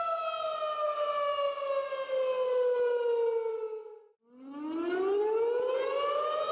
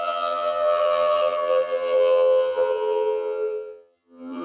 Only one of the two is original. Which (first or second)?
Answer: first